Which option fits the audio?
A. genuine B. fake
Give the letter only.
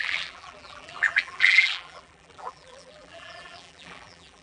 B